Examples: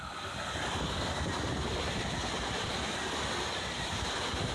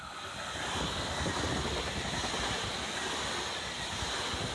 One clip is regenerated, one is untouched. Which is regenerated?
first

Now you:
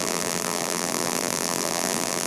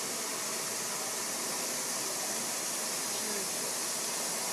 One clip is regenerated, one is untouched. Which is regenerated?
first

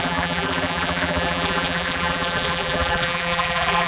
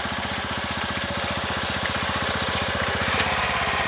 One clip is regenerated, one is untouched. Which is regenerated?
first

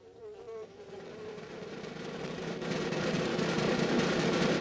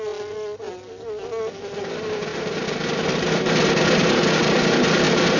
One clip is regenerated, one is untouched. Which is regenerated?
first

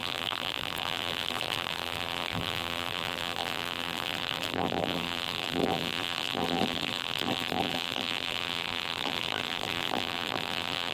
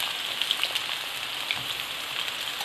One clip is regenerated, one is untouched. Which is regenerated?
first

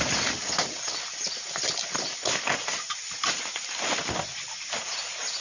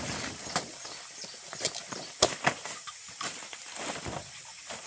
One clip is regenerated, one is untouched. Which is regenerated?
second